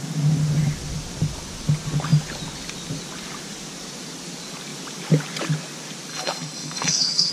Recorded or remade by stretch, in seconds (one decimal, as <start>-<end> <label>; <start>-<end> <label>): 0.0-6.1 recorded; 6.1-7.3 remade